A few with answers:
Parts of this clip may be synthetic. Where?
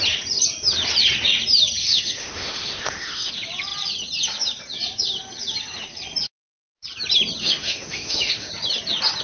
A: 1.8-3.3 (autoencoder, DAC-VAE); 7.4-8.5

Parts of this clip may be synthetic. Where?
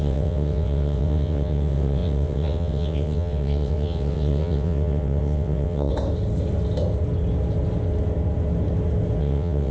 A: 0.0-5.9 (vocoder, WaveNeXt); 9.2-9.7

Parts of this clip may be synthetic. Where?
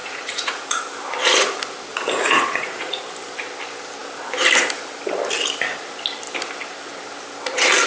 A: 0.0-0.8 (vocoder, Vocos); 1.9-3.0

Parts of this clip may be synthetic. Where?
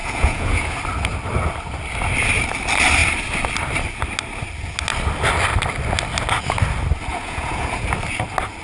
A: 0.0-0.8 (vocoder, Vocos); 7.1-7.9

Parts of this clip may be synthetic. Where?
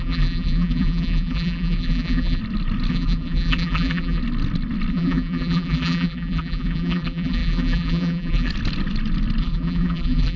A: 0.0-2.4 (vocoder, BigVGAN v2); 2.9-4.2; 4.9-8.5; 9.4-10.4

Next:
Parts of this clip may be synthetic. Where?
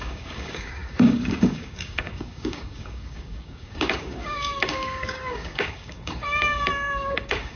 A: 0.0-7.6 (codec, DAC)